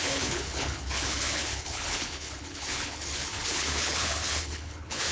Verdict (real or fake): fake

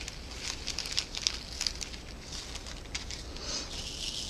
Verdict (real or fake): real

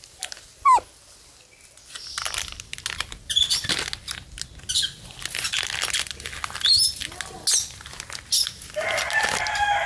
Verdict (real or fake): real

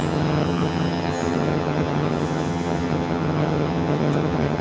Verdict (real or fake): fake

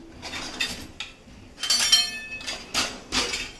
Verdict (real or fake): real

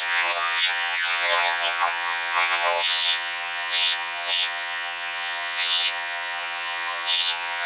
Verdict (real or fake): fake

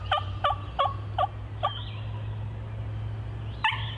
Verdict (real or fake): real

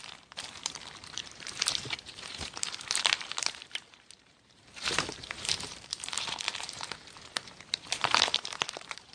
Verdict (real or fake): fake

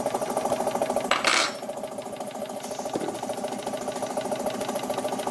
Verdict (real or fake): real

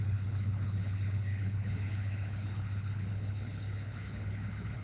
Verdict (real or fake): fake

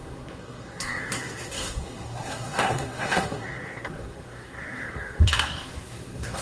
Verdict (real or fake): fake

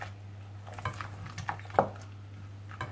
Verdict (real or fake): real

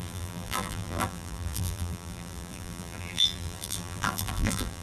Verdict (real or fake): fake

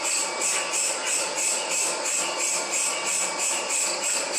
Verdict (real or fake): real